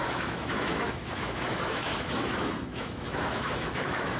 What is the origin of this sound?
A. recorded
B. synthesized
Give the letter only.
B